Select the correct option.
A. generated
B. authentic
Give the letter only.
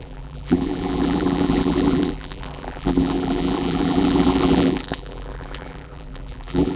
A